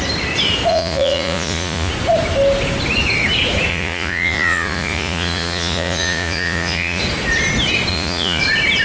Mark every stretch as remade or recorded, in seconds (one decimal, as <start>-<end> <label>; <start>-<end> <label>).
0.0-0.7 recorded; 0.7-1.9 remade; 1.9-3.7 recorded; 3.7-7.0 remade; 7.0-7.9 recorded; 7.9-8.4 remade; 8.4-8.8 recorded